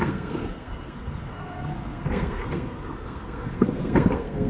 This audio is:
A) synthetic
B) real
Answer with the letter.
A